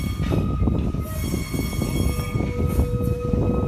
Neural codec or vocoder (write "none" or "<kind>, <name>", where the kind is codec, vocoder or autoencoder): none